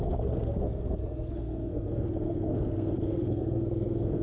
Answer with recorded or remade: remade